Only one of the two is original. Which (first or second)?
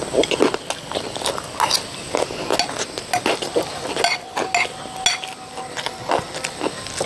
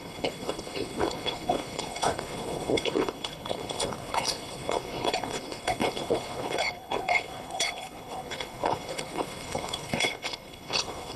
first